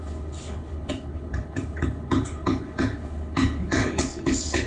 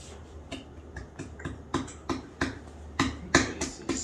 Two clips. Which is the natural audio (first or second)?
second